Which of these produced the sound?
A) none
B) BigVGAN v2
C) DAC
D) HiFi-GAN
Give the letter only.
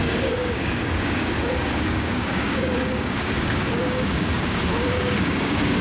C